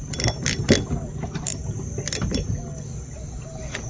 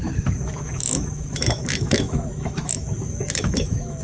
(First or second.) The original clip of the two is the first